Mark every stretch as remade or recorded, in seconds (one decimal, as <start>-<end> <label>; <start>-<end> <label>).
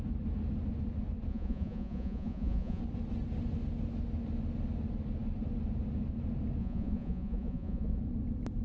0.0-1.3 recorded; 1.3-2.8 remade; 2.8-6.6 recorded; 6.6-8.0 remade; 8.0-8.6 recorded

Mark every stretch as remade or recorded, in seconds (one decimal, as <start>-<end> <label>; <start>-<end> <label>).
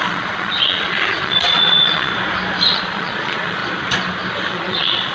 0.0-2.1 remade; 2.1-2.7 recorded; 2.7-3.6 remade; 3.6-4.5 recorded; 4.5-5.1 remade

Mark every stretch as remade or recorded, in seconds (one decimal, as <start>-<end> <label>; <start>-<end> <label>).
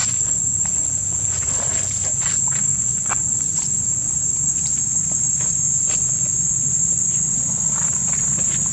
0.0-1.5 remade; 1.5-2.7 recorded; 2.7-4.6 remade; 4.6-8.7 recorded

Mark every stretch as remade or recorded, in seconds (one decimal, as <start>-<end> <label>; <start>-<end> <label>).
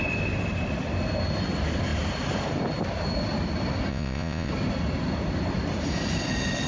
0.0-3.9 recorded; 3.9-4.5 remade; 4.5-6.7 recorded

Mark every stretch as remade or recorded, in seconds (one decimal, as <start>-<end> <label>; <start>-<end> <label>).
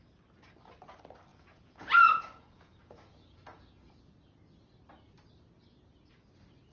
0.0-1.3 recorded; 1.3-4.0 remade; 4.0-6.7 recorded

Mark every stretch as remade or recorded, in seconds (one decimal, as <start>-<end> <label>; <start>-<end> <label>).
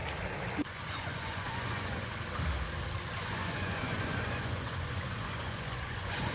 0.0-0.5 recorded; 0.5-2.1 remade; 2.1-3.2 recorded; 3.2-6.3 remade